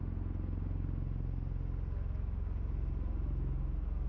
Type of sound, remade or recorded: recorded